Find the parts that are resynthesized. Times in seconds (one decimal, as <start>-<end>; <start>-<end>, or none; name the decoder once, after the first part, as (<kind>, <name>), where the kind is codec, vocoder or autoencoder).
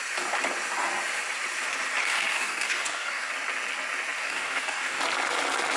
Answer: 2.0-3.3 (codec, DAC); 4.2-5.0